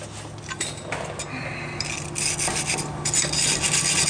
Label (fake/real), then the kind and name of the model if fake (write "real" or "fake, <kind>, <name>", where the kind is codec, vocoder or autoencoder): real